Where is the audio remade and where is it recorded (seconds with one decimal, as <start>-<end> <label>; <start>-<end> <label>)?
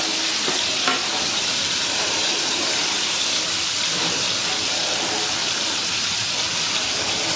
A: 0.0-1.0 recorded; 1.0-4.3 remade; 4.3-5.4 recorded; 5.4-7.4 remade